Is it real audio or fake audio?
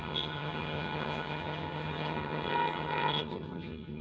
fake